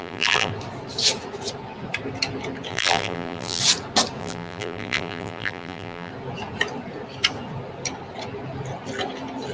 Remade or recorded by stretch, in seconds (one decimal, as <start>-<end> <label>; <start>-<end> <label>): 0.0-0.5 remade; 0.5-2.7 recorded; 2.7-3.6 remade; 3.6-4.2 recorded; 4.2-6.1 remade; 6.1-9.5 recorded